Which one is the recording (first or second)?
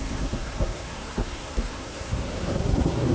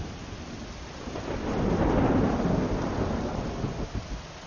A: second